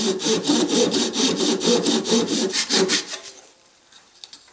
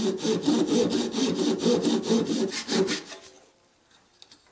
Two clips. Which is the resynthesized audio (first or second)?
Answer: first